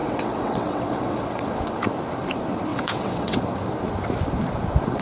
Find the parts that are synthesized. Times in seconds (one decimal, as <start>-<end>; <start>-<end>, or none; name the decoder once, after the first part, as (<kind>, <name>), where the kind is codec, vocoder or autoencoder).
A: 0.0-1.6 (vocoder, WaveNeXt); 2.7-3.4